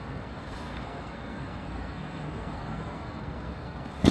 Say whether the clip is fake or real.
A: fake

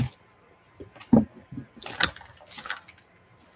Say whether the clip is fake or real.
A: real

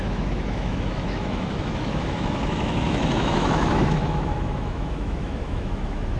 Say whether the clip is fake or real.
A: fake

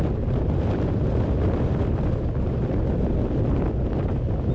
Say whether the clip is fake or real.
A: fake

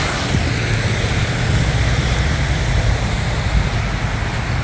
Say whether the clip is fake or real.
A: real